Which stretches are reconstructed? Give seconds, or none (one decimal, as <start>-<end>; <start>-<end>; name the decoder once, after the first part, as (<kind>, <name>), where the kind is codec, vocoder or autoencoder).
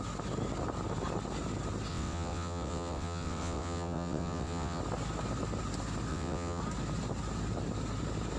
1.9-4.8 (vocoder, WaveNeXt); 6.1-6.6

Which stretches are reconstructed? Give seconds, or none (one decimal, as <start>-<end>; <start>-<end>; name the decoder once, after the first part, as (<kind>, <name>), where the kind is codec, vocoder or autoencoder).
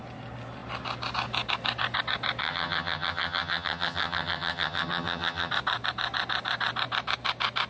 2.4-5.5 (vocoder, HiFi-GAN)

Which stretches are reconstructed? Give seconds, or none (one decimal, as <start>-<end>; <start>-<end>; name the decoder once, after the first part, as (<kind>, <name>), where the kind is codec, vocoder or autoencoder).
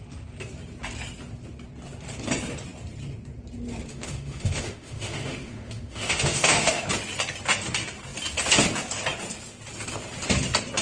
3.9-6.8 (autoencoder, DAC-VAE)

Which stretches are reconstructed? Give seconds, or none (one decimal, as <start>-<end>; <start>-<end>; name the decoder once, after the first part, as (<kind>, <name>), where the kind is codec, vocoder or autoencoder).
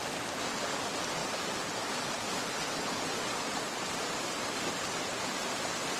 none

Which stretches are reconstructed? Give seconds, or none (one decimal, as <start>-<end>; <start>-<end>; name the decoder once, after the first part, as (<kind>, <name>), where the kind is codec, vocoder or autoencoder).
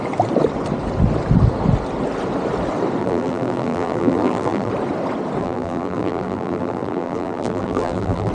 3.0-4.7 (vocoder, BigVGAN v2); 5.4-8.3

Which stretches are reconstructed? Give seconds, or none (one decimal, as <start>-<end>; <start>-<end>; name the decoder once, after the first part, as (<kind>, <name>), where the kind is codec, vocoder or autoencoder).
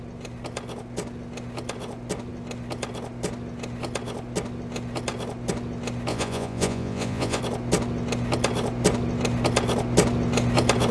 6.1-7.4 (vocoder, Vocos)